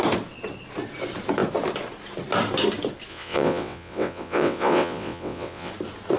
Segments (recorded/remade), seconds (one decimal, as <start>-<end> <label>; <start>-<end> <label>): 0.0-3.1 recorded; 3.1-5.7 remade; 5.7-6.2 recorded